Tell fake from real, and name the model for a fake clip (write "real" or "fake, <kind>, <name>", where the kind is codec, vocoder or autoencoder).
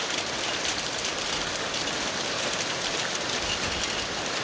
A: real